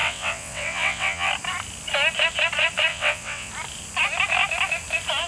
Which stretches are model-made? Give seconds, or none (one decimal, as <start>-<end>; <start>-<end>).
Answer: 0.0-1.3; 2.9-3.5